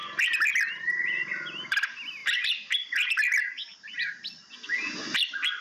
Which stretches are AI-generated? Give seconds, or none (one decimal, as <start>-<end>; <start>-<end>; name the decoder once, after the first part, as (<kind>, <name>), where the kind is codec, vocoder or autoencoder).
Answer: none